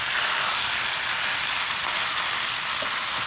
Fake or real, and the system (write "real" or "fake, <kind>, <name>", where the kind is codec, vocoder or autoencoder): real